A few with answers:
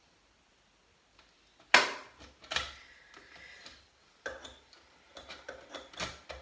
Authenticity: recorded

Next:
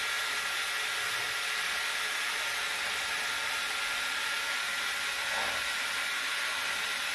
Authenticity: recorded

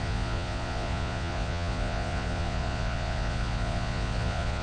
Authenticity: remade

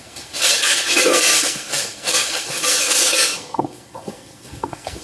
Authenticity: remade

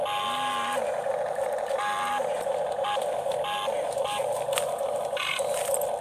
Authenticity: recorded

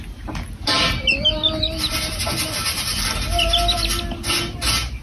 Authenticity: recorded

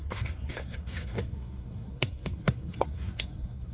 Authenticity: remade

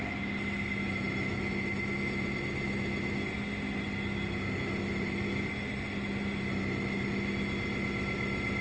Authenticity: recorded